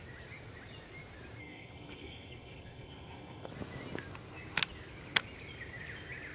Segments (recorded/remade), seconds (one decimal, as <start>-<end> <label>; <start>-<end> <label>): 0.0-1.4 recorded; 1.4-3.5 remade; 3.5-6.3 recorded